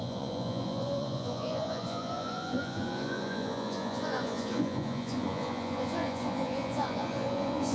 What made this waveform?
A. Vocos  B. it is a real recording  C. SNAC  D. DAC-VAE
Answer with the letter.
A